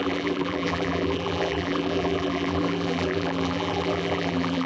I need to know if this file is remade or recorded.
remade